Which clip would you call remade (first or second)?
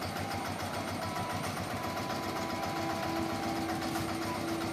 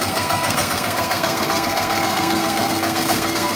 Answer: second